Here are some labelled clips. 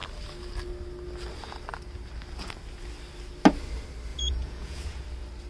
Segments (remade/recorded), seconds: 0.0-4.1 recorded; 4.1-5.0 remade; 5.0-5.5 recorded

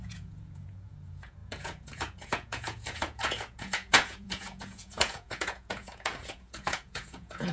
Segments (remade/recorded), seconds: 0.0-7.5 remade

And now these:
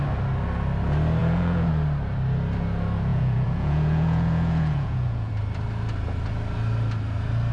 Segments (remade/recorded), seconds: 0.0-1.2 recorded; 1.2-1.7 remade; 1.7-3.1 recorded; 3.1-5.3 remade; 5.3-7.5 recorded

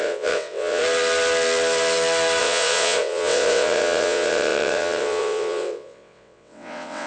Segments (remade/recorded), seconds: 0.0-0.8 remade; 0.8-2.4 recorded; 2.4-7.1 remade

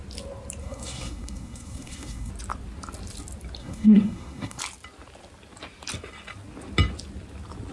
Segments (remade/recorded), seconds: 0.0-0.6 recorded; 0.6-2.3 remade; 2.3-3.6 recorded; 3.6-4.6 remade; 4.6-7.7 recorded

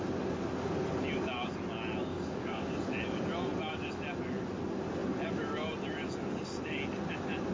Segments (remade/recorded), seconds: 0.0-2.1 recorded; 2.1-2.8 remade; 2.8-7.5 recorded

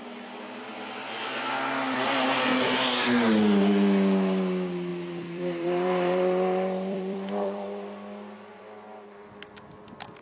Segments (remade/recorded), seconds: 0.0-1.1 remade; 1.1-4.9 recorded; 4.9-8.6 remade; 8.6-10.2 recorded